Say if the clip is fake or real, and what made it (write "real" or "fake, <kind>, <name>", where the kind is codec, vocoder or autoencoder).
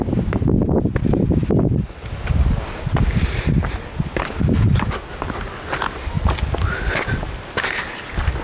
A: real